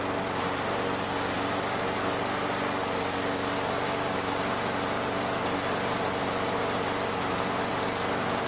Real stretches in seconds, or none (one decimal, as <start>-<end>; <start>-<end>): 0.0-8.5